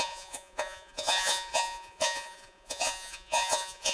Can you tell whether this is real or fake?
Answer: fake